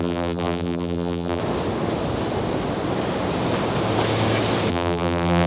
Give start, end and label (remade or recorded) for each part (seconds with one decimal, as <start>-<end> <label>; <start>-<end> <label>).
0.0-1.4 remade; 1.4-4.7 recorded; 4.7-5.5 remade